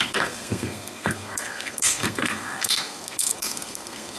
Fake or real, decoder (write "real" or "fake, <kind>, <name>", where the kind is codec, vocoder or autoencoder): fake, codec, SNAC